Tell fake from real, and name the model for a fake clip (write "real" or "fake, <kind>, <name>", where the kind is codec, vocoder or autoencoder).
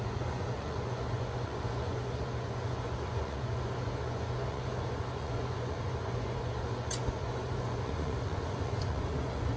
fake, vocoder, Vocos